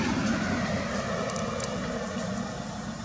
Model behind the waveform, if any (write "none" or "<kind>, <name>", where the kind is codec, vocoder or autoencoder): none